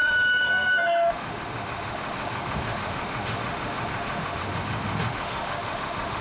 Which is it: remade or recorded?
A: remade